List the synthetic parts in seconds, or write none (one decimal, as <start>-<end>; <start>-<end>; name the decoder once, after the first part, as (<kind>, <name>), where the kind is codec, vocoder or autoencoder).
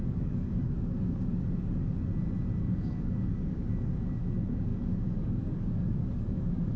0.0-1.3 (codec, DAC); 2.6-6.8